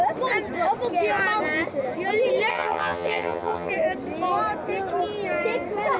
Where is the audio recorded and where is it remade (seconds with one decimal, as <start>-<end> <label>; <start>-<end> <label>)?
0.0-2.5 recorded; 2.5-3.7 remade; 3.7-6.0 recorded